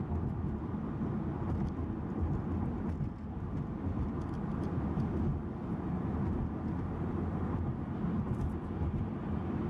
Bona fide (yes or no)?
yes